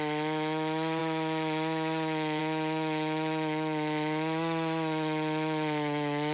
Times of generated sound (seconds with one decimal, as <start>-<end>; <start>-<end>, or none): 0.0-6.3